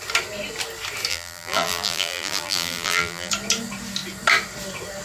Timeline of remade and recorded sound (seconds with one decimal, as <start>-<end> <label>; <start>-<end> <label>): 0.0-1.1 recorded; 1.1-3.3 remade; 3.3-5.0 recorded